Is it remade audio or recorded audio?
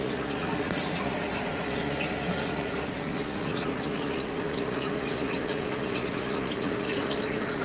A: remade